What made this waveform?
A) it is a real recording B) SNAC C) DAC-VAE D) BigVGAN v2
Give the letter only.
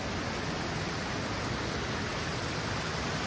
A